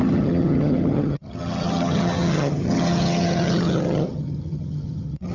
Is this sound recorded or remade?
remade